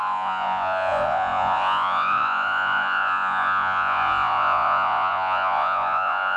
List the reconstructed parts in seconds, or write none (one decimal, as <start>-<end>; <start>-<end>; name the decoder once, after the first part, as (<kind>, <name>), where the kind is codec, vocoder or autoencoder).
0.0-6.4 (vocoder, Vocos)